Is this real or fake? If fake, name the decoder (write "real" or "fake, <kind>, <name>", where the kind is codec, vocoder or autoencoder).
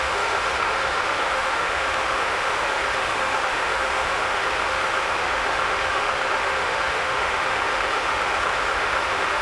fake, autoencoder, DAC-VAE